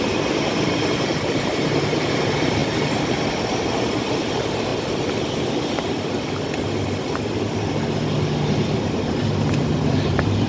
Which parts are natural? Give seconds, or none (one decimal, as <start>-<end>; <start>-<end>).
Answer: 4.7-9.5